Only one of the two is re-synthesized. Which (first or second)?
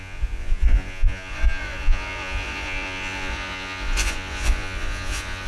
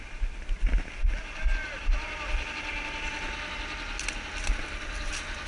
first